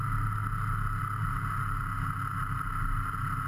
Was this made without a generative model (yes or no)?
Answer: yes